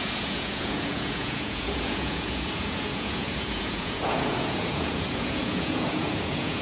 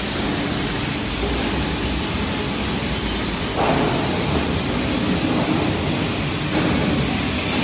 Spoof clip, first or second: first